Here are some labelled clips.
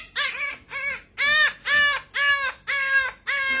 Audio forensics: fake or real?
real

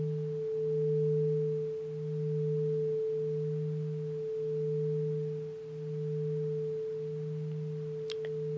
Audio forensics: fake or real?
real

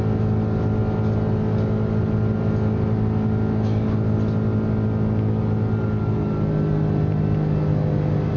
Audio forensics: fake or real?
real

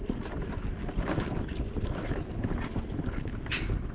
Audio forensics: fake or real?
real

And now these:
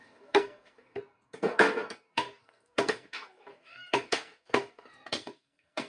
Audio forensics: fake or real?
fake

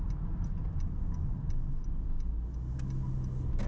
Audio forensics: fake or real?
real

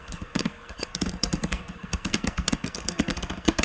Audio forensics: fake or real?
fake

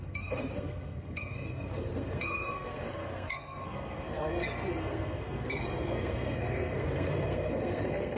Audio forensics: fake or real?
fake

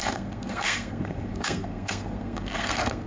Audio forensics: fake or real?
fake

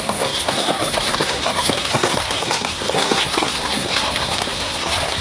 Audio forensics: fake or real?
fake